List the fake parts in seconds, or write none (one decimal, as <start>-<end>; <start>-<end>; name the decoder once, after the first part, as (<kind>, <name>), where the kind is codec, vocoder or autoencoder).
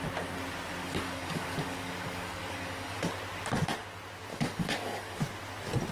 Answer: 0.8-3.0 (codec, DAC); 4.3-5.2